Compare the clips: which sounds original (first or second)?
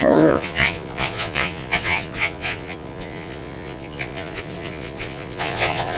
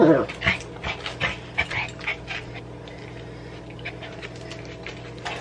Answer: second